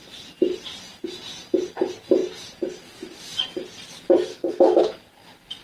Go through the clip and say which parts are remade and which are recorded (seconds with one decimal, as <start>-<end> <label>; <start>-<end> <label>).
0.0-4.3 recorded; 4.3-4.8 remade; 4.8-5.6 recorded